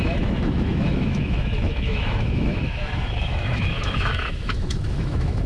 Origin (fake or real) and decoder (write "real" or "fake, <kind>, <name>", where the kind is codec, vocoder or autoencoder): fake, autoencoder, DAC-VAE